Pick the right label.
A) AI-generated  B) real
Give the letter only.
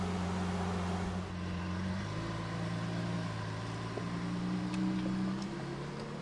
B